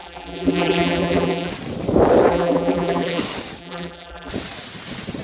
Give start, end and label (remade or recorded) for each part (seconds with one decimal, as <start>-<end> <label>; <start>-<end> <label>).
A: 0.0-1.5 remade; 1.5-2.3 recorded; 2.3-3.2 remade; 3.2-3.6 recorded; 3.6-4.3 remade; 4.3-5.2 recorded